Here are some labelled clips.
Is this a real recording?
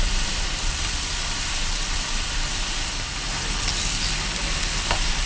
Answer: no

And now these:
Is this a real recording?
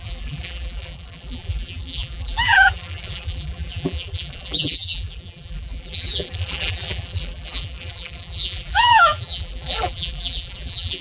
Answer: no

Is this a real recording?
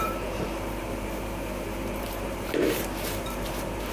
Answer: no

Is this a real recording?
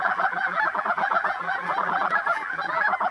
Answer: no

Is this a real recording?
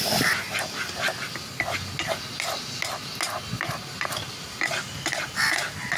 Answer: yes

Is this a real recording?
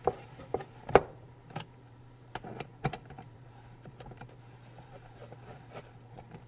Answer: no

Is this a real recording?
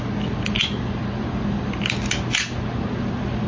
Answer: yes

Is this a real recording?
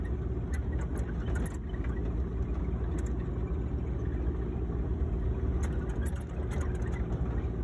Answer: yes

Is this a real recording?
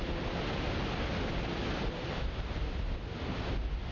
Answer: yes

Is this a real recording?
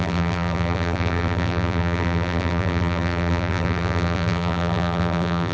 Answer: no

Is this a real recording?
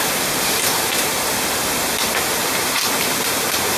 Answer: no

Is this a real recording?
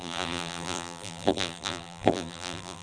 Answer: no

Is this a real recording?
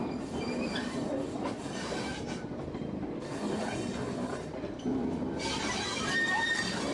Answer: no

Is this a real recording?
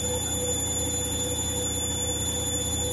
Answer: yes